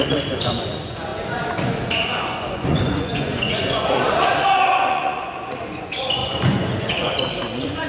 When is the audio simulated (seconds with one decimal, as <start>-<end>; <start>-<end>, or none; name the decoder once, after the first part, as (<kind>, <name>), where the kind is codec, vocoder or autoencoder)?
0.0-7.9 (vocoder, Vocos)

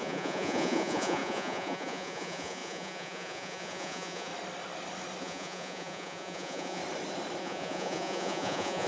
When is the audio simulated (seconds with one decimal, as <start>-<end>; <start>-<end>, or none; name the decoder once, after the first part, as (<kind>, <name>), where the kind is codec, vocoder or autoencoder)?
0.0-4.3 (vocoder, Vocos); 5.2-6.8; 7.4-8.9